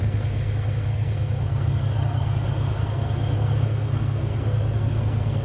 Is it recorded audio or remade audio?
remade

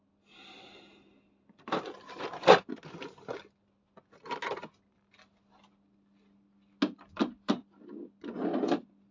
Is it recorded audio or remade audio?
recorded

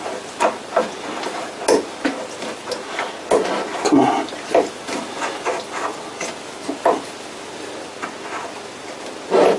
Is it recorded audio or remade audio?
recorded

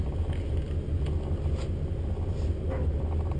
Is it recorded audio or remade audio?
recorded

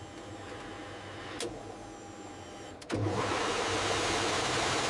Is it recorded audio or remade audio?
recorded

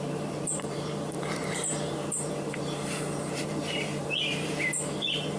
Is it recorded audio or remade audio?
remade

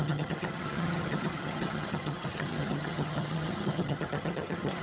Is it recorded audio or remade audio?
remade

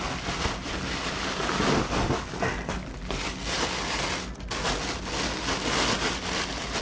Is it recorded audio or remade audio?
recorded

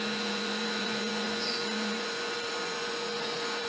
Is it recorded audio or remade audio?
remade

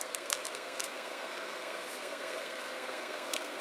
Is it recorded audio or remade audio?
remade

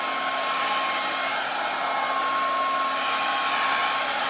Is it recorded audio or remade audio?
recorded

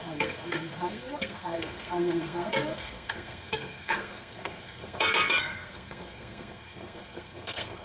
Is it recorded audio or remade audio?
remade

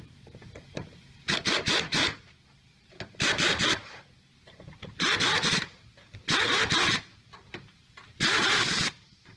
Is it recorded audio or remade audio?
remade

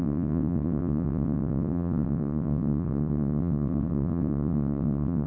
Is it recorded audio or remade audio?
remade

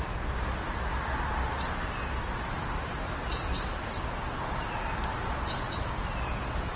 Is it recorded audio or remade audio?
recorded